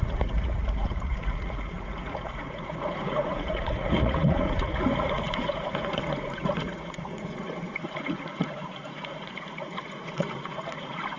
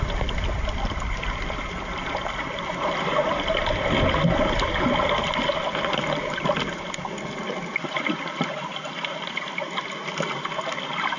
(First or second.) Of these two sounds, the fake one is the first